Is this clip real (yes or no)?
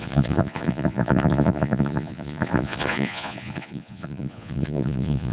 no